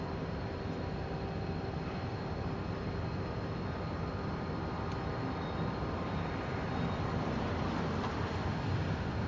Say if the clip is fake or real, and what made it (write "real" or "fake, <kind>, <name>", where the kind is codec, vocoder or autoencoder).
real